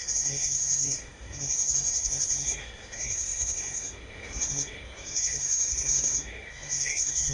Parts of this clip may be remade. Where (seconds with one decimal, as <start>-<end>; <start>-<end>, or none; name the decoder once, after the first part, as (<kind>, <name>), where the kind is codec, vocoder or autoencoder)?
0.0-7.3 (codec, SNAC)